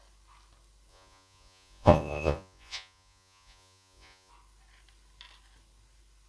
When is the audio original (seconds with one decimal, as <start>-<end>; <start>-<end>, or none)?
0.0-0.9; 4.3-6.3